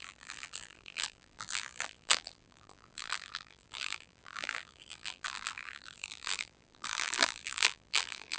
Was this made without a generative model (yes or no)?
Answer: no